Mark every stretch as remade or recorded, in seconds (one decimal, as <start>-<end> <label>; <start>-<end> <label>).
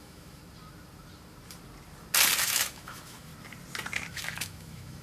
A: 0.0-0.4 remade; 0.4-2.4 recorded; 2.4-3.3 remade; 3.3-4.1 recorded; 4.1-5.0 remade